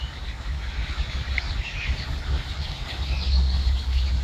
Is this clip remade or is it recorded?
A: remade